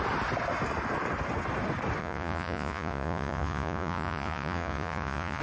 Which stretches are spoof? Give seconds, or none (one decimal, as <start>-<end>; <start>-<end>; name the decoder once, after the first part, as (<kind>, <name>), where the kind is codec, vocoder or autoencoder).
2.0-5.4 (vocoder, Vocos)